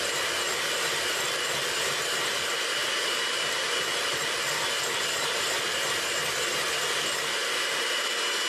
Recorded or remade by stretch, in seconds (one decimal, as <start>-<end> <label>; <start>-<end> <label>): 0.0-2.8 recorded; 2.8-3.6 remade; 3.6-7.4 recorded; 7.4-8.1 remade; 8.1-8.5 recorded